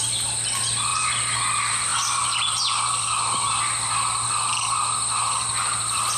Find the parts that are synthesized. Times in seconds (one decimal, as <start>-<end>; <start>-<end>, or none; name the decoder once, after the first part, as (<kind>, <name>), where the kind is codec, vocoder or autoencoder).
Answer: 0.9-1.4 (vocoder, BigVGAN v2)